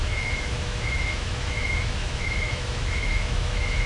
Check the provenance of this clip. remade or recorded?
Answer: remade